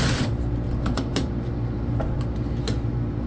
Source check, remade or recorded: recorded